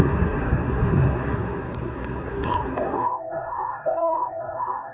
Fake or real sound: fake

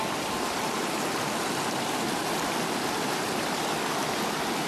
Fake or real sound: real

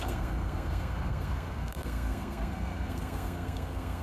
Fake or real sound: fake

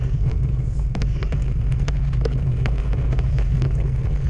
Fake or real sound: fake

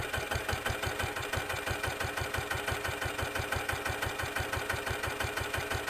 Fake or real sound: real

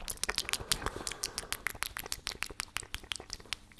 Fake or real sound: real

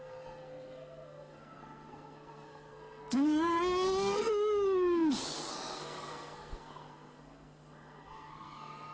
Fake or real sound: fake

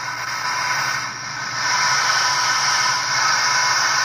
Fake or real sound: real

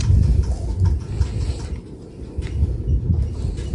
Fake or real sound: real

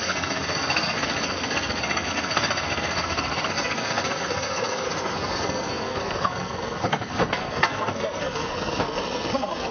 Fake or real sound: fake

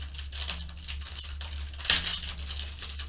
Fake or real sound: real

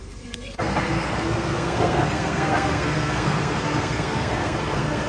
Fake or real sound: fake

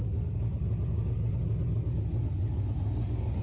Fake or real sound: real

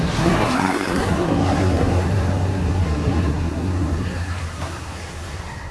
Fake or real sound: fake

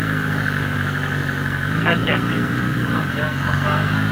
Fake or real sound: fake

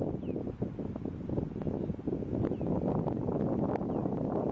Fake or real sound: real